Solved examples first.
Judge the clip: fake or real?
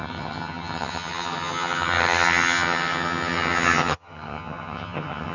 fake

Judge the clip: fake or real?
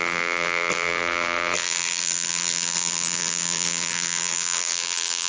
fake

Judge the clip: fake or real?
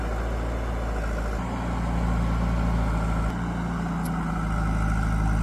real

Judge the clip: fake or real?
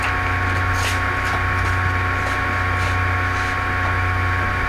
real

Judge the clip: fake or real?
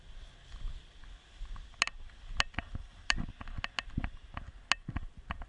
real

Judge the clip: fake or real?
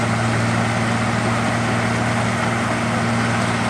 real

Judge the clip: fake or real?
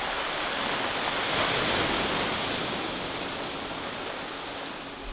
real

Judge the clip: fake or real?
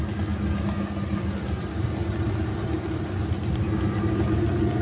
real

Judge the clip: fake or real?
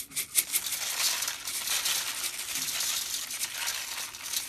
real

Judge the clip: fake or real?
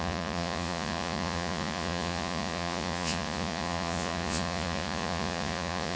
fake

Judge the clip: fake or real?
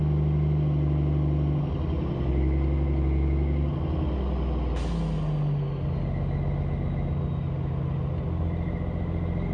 real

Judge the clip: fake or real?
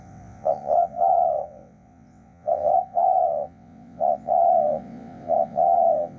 fake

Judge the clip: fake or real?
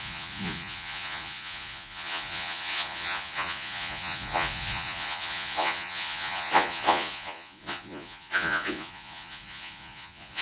fake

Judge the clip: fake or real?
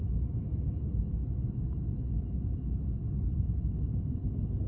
real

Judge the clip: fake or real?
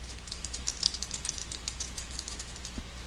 fake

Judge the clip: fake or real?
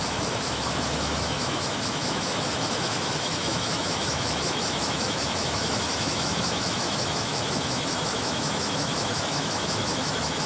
fake